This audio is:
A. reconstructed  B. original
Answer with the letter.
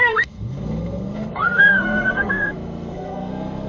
A